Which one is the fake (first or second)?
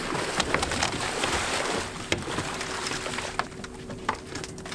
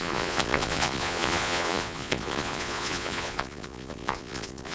second